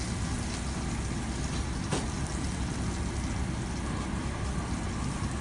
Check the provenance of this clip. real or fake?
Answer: real